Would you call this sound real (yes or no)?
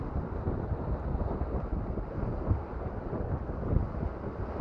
yes